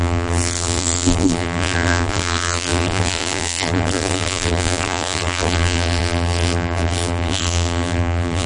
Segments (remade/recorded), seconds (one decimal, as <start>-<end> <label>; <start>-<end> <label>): 0.0-8.5 remade